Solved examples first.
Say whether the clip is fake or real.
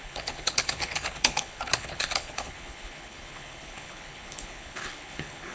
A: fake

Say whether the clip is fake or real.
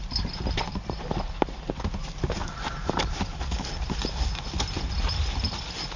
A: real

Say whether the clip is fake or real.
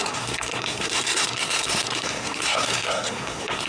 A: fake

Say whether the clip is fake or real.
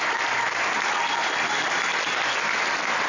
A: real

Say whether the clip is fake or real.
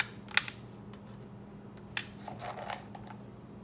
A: real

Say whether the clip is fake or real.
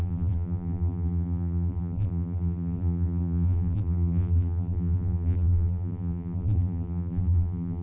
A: fake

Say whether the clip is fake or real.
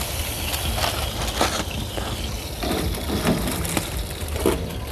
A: real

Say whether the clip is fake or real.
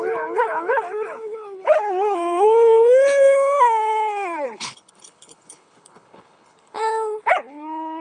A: fake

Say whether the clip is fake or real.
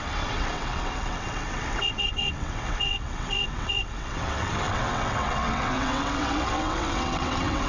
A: fake